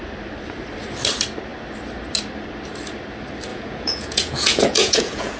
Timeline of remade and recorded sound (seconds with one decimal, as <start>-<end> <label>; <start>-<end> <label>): 0.0-3.5 recorded; 3.5-5.4 remade